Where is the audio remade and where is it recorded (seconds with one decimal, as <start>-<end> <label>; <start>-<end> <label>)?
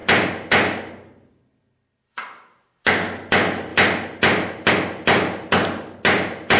0.0-6.6 recorded